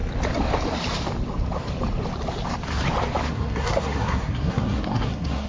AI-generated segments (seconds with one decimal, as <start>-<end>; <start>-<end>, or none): 3.3-5.5